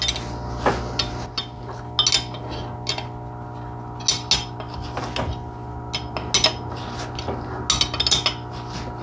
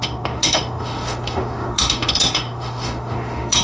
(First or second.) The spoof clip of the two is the second